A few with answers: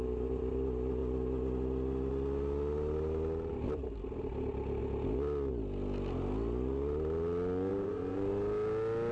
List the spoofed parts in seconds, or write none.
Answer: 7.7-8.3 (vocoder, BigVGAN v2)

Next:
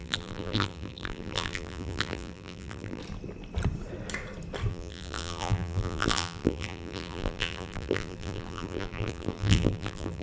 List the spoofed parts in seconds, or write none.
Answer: 0.0-3.0 (vocoder, BigVGAN v2); 4.7-10.2

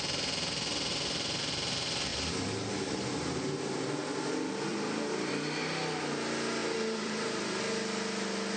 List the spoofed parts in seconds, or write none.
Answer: 0.9-1.4 (vocoder, BigVGAN v2); 4.7-5.3; 6.6-7.6

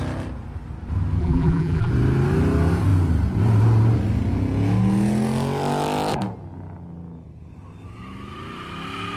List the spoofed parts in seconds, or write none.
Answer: 1.2-1.9 (vocoder, BigVGAN v2)